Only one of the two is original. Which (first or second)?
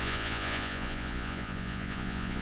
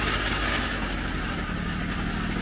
second